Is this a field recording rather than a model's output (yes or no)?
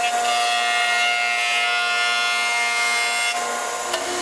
yes